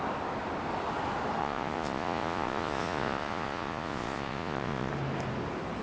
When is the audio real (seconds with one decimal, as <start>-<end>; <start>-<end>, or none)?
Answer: 0.0-1.4; 4.9-5.8